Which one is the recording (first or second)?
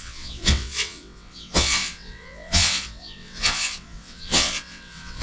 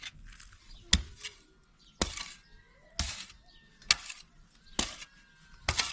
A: second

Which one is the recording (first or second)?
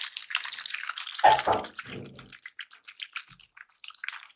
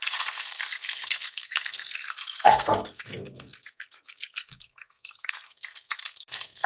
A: first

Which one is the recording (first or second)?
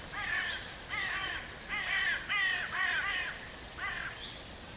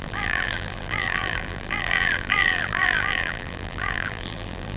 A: first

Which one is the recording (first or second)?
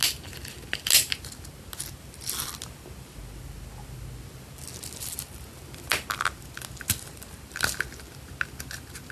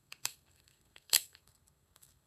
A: first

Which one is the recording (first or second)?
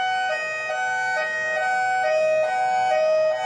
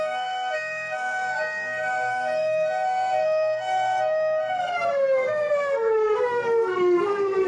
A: first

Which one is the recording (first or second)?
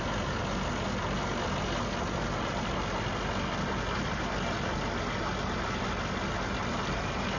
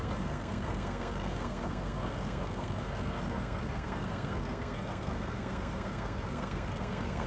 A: first